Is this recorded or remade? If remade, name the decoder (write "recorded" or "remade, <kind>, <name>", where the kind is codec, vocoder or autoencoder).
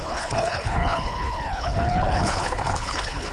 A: remade, codec, HILCodec